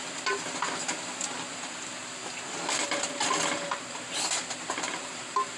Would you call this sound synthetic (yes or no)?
yes